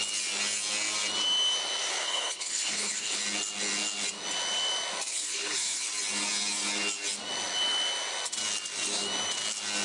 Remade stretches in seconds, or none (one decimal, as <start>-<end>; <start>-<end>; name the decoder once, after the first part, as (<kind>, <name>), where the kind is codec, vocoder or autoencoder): 1.9-3.2 (codec, HILCodec); 5.1-5.9